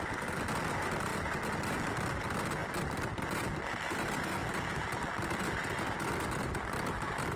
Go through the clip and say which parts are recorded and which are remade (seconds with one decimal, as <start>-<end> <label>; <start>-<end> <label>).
0.0-7.4 recorded